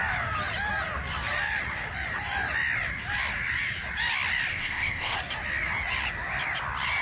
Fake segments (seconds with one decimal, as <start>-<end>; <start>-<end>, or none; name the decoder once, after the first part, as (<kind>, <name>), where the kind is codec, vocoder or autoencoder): 4.5-5.2 (codec, ZipCodec)